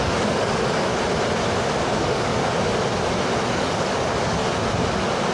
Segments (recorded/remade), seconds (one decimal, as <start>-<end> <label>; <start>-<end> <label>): 0.0-0.9 remade; 0.9-1.8 recorded; 1.8-2.3 remade; 2.3-3.5 recorded; 3.5-4.4 remade; 4.4-5.3 recorded